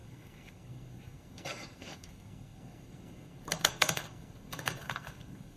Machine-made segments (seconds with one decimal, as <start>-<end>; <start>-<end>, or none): 0.0-5.6